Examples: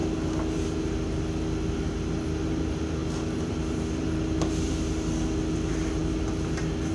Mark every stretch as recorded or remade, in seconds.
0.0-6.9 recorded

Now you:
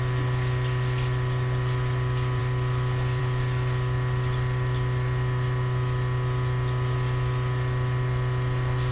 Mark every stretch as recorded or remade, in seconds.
0.0-8.9 recorded

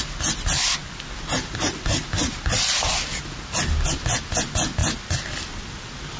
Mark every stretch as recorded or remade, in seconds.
0.0-6.2 recorded

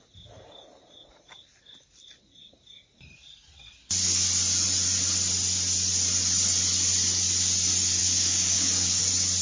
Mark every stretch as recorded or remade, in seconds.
0.0-8.0 recorded; 8.0-9.0 remade; 9.0-9.4 recorded

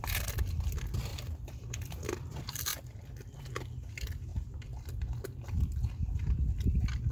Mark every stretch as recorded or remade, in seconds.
0.0-1.1 recorded; 1.1-2.3 remade; 2.3-7.1 recorded